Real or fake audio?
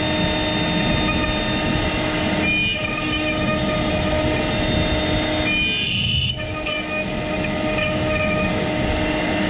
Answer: real